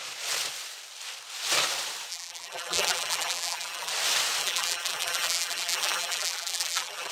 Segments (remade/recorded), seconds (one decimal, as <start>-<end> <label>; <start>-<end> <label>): 0.0-2.1 recorded; 2.1-3.9 remade; 3.9-4.4 recorded; 4.4-7.1 remade